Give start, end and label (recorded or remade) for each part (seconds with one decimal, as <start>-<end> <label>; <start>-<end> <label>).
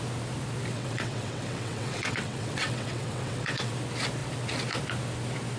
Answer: 0.0-0.7 recorded; 0.7-3.7 remade; 3.7-5.6 recorded